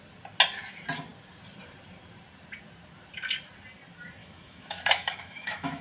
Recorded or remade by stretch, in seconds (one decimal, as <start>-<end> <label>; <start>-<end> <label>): 0.0-4.2 recorded; 4.2-5.8 remade